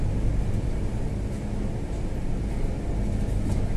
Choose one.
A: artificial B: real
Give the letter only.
B